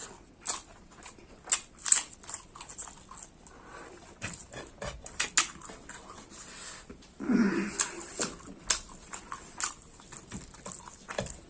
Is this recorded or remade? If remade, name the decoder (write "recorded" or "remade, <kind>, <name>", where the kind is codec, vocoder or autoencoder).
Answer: recorded